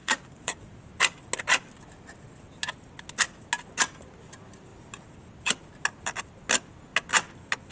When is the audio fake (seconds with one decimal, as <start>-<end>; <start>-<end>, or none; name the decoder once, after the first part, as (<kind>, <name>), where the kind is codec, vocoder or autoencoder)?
0.0-0.8 (vocoder, Vocos)